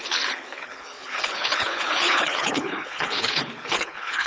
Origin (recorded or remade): remade